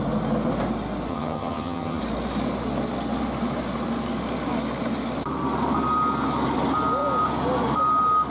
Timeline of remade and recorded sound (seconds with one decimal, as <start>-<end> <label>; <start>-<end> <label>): 0.0-1.1 recorded; 1.1-2.0 remade; 2.0-8.3 recorded